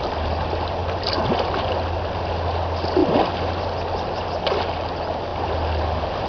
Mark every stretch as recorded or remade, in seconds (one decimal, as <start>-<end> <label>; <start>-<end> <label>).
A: 0.0-6.3 recorded

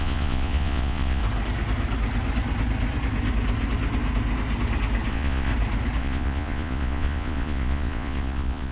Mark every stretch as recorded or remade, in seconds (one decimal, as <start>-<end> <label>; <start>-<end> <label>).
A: 0.0-1.2 remade; 1.2-5.1 recorded; 5.1-5.5 remade; 5.5-6.0 recorded; 6.0-8.7 remade

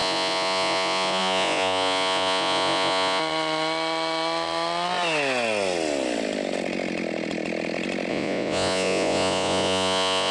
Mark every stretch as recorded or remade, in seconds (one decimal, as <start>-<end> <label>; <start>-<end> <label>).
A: 0.0-3.2 remade; 3.2-8.1 recorded; 8.1-10.3 remade

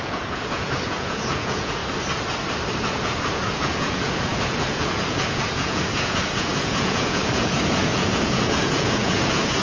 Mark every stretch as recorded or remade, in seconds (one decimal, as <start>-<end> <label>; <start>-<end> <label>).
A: 0.0-1.8 remade; 1.8-2.8 recorded; 2.8-9.6 remade

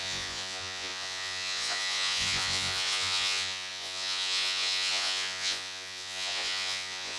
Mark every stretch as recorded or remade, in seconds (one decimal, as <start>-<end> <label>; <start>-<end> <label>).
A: 0.0-7.2 remade